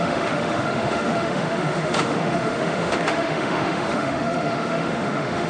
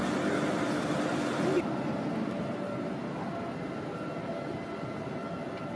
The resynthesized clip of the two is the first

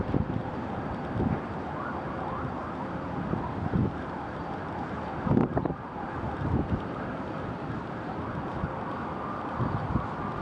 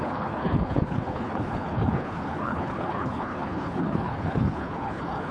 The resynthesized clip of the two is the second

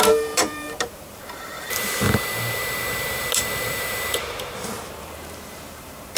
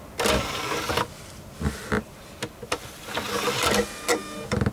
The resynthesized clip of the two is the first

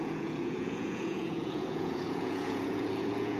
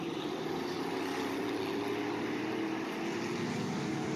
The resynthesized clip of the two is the first